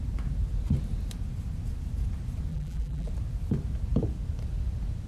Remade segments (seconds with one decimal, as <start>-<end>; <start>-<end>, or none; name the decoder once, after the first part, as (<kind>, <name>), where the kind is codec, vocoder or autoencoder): 2.5-3.1 (vocoder, BigVGAN v2)